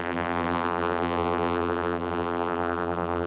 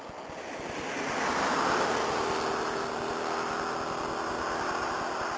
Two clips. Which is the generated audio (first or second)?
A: first